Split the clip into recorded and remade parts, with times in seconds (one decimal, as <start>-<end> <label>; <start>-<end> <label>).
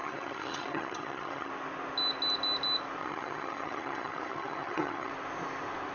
0.0-1.5 remade; 1.5-3.0 recorded; 3.0-5.1 remade; 5.1-5.9 recorded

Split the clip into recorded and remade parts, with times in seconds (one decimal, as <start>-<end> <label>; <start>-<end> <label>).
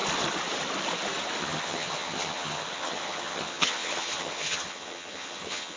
0.0-1.4 recorded; 1.4-5.8 remade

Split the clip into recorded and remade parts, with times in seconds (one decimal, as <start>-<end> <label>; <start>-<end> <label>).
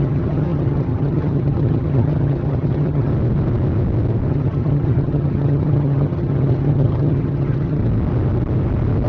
0.0-3.1 remade; 3.1-4.3 recorded; 4.3-7.8 remade; 7.8-9.1 recorded